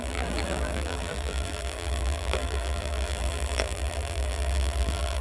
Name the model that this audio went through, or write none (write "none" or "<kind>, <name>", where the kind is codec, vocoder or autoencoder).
vocoder, BigVGAN v2